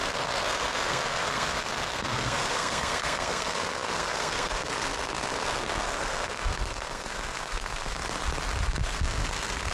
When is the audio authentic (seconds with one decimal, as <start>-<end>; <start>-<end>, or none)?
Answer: 8.0-8.7